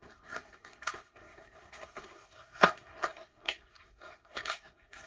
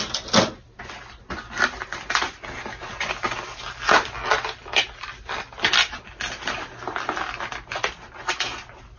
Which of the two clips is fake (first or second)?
first